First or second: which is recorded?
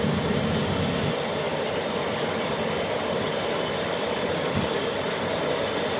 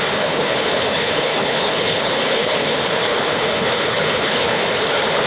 first